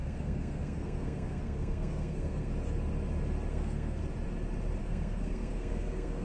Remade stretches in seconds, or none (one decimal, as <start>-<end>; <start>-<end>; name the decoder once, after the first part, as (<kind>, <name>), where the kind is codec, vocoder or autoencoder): 0.0-2.5 (codec, SNAC); 3.5-4.0; 4.8-6.2